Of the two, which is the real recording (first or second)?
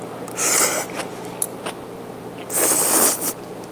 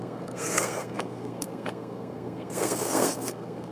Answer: first